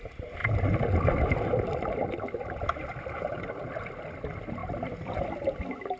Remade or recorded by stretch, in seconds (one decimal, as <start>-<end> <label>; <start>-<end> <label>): 0.0-4.6 recorded; 4.6-5.6 remade; 5.6-6.0 recorded